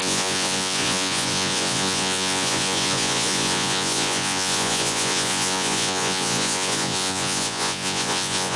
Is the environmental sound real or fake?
fake